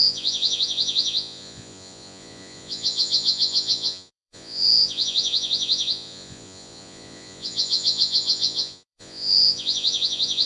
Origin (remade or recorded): remade